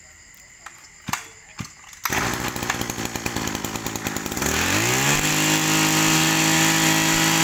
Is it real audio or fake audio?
real